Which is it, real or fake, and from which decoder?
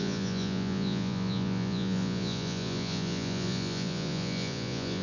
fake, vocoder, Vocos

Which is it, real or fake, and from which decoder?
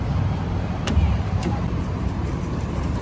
fake, vocoder, BigVGAN v2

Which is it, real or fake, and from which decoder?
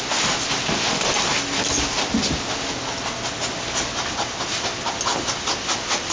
real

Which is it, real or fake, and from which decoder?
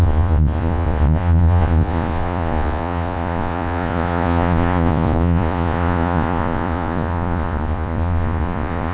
fake, vocoder, Vocos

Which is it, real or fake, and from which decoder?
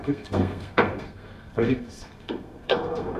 fake, codec, SNAC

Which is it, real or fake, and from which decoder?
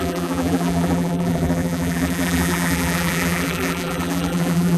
fake, vocoder, BigVGAN v2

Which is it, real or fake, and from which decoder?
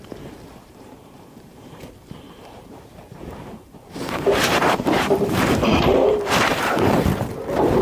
fake, vocoder, BigVGAN v2